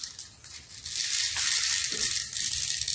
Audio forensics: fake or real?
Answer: real